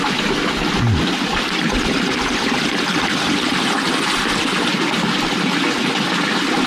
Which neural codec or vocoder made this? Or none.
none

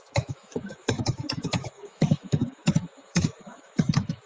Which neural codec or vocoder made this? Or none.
autoencoder, DAC-VAE